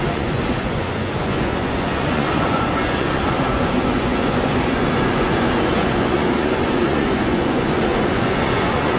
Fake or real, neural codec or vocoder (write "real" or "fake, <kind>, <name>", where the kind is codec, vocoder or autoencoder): fake, vocoder, Vocos